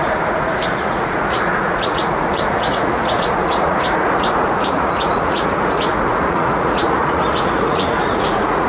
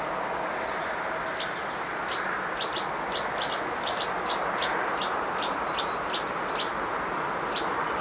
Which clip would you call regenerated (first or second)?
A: first